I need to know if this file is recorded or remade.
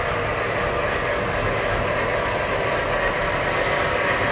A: recorded